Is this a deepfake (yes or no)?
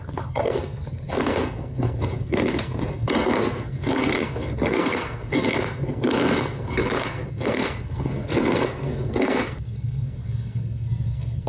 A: yes